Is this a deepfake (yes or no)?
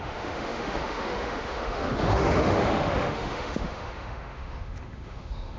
yes